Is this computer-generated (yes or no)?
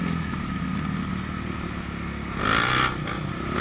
no